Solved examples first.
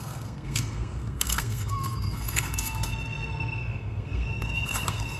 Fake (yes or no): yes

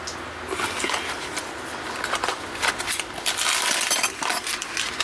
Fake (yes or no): no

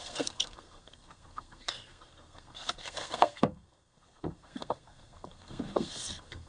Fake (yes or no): yes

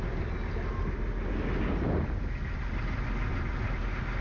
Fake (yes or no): no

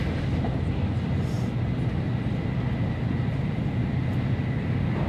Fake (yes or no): no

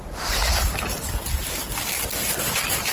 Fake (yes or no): no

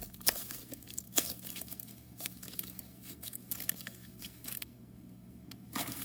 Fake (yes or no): yes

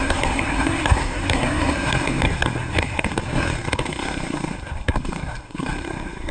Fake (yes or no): yes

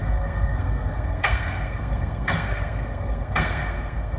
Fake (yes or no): yes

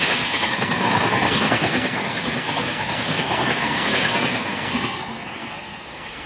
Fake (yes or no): yes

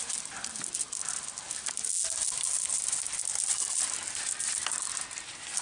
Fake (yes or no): no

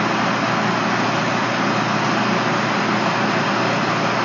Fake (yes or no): no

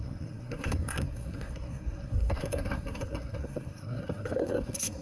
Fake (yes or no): yes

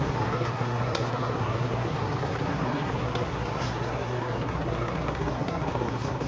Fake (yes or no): yes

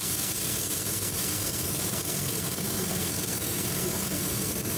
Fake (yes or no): yes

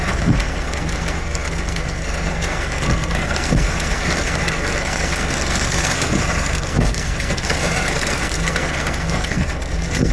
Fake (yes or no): yes